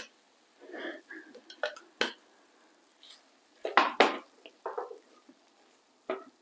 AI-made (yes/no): no